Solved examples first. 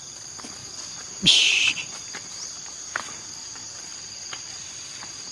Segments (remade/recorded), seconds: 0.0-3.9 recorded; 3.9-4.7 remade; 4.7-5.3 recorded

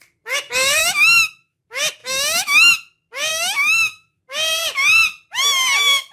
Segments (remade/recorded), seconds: 0.0-0.8 recorded; 0.8-1.6 remade; 1.6-2.0 recorded; 2.0-2.7 remade; 2.7-3.3 recorded; 3.3-4.2 remade; 4.2-6.1 recorded

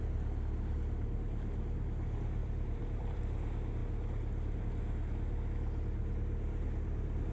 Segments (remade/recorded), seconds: 0.0-2.4 recorded; 2.4-3.2 remade; 3.2-7.3 recorded

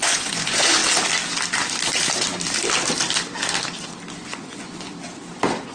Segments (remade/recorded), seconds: 0.0-0.8 remade; 0.8-4.1 recorded; 4.1-4.9 remade; 4.9-5.7 recorded

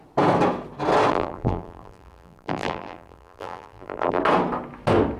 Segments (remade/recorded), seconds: 0.0-1.1 recorded; 1.1-4.2 remade; 4.2-5.2 recorded